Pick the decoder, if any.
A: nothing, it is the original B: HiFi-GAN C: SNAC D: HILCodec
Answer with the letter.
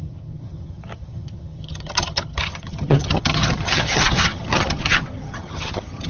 B